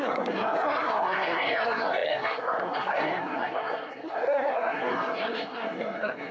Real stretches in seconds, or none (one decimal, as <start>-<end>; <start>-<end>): none